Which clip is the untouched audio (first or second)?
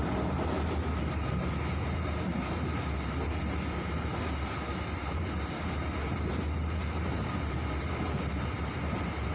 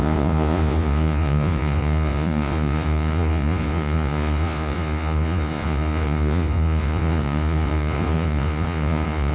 first